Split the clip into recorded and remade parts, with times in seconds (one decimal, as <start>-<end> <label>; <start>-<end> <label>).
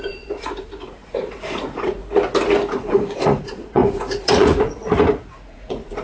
0.0-2.0 remade; 2.0-2.7 recorded; 2.7-6.0 remade